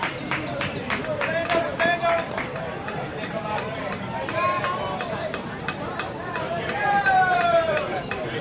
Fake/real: fake